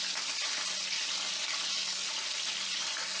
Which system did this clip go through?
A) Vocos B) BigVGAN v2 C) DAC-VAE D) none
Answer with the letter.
D